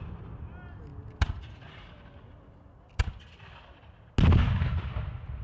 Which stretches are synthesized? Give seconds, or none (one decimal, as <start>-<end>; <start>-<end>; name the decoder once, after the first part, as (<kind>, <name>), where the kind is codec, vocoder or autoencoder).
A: none